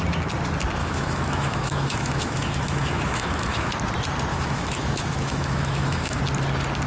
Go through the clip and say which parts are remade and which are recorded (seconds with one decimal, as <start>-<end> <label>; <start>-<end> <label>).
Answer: 0.0-0.8 recorded; 0.8-3.7 remade; 3.7-4.3 recorded; 4.3-6.2 remade; 6.2-6.9 recorded